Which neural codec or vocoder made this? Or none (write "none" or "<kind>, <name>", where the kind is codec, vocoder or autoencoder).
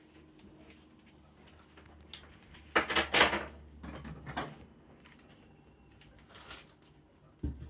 none